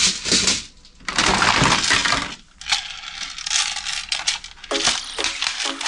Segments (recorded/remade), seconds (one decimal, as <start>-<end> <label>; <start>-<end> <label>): 0.0-5.9 recorded